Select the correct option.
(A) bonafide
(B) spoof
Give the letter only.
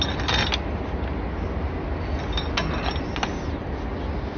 A